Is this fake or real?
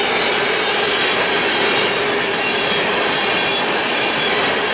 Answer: real